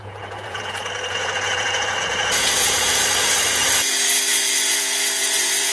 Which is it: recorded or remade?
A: remade